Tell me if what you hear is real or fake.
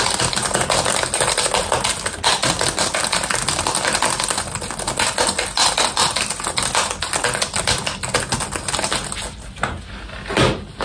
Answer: real